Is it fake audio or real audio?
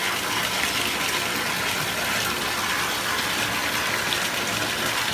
real